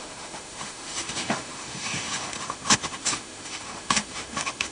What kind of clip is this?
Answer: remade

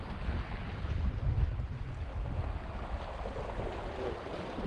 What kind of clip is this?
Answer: recorded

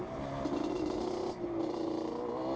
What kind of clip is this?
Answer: recorded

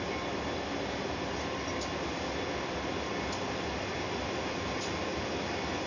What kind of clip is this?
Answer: recorded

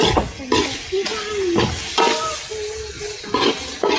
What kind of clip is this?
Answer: recorded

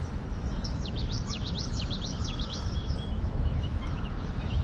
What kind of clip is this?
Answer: remade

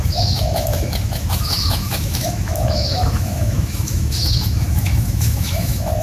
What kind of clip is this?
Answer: remade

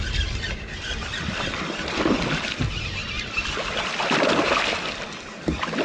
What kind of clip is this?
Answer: recorded